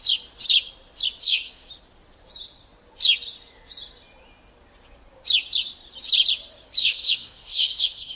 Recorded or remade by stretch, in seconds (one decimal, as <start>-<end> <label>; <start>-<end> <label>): 0.0-1.2 recorded; 1.2-1.7 remade; 1.7-6.8 recorded; 6.8-8.2 remade